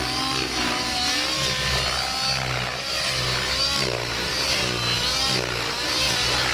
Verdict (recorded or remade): recorded